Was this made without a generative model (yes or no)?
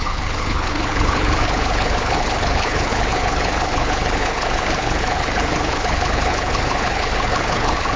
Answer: no